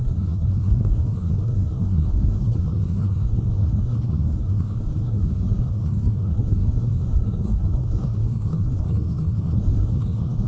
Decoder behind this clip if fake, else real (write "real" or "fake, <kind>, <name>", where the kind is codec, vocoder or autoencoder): fake, codec, SNAC